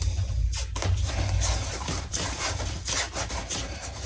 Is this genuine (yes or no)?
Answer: yes